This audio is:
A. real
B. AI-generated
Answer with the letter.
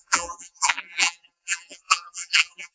B